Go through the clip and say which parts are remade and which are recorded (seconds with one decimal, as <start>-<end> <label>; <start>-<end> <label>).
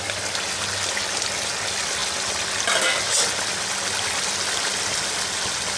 0.0-5.8 recorded